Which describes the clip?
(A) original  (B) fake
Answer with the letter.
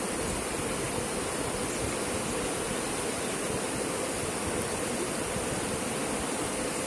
A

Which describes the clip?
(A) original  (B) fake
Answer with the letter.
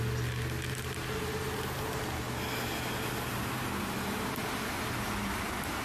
A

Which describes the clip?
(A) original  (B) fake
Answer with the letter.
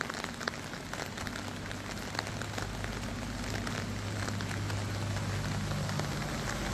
A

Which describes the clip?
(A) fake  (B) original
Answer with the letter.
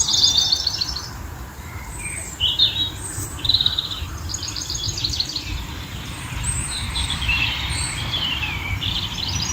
A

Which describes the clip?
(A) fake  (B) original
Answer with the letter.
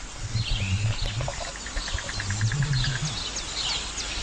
B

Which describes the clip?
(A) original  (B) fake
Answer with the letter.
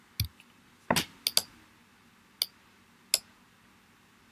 A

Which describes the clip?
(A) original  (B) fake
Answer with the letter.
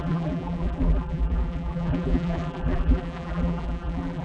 B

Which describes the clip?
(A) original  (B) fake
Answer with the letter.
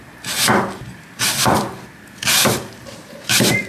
B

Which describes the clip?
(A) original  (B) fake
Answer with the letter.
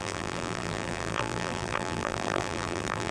B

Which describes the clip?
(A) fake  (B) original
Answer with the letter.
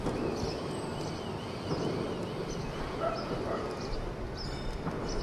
B